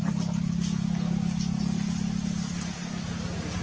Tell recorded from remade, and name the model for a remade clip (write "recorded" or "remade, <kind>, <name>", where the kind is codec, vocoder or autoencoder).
recorded